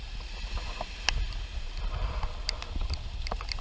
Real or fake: real